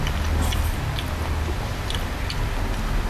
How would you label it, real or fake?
real